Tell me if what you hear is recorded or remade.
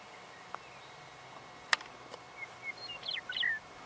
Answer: recorded